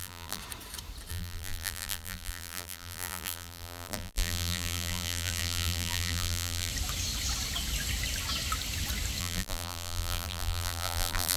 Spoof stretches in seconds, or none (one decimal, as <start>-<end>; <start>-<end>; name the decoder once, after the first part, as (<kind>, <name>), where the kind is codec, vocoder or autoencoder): 0.0-0.4 (vocoder, BigVGAN v2); 1.1-6.7; 9.2-11.4